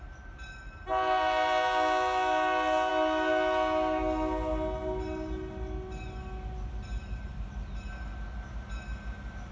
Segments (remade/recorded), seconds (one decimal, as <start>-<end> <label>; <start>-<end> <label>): 0.0-9.5 recorded

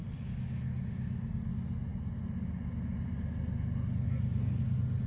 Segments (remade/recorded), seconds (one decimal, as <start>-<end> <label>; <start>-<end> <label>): 0.0-5.1 recorded